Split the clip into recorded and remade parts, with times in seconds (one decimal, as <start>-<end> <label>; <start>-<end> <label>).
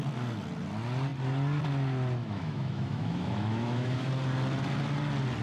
0.0-2.2 recorded; 2.2-4.1 remade; 4.1-5.4 recorded